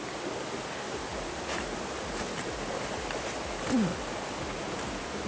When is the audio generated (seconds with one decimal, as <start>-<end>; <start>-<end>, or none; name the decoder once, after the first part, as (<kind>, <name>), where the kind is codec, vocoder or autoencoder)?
3.9-4.6 (vocoder, BigVGAN v2)